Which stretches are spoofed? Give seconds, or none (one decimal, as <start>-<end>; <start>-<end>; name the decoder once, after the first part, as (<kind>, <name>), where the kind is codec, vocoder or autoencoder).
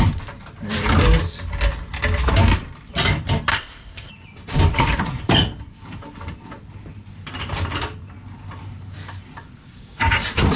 3.5-4.1 (codec, ZipCodec)